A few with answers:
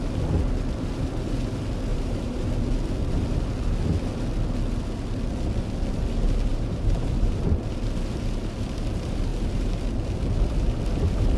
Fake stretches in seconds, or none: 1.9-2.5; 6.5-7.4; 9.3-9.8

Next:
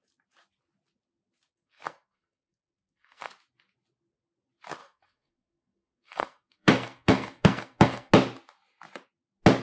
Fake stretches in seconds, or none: 1.5-3.3; 4.8-8.1

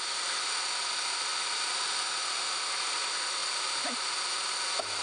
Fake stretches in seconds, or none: 3.4-4.1

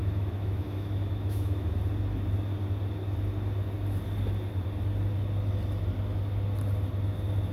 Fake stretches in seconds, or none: 0.0-1.8

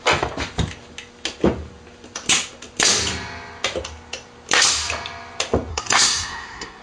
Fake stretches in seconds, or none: 5.7-6.8

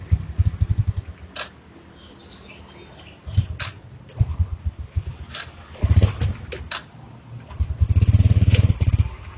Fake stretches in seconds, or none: none